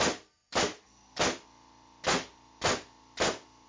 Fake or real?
real